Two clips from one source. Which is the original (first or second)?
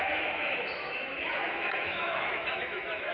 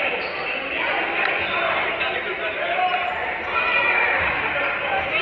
second